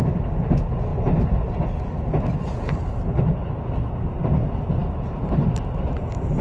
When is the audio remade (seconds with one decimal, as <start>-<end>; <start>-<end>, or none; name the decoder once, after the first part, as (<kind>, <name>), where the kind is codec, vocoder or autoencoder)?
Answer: none